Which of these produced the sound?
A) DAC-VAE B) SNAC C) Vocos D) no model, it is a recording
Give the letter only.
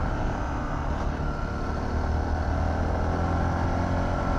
D